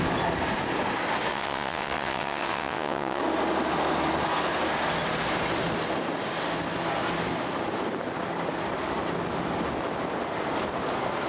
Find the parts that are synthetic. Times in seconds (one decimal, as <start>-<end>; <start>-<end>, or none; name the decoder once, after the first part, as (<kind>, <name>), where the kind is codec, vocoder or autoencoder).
1.3-3.2 (vocoder, WaveNeXt)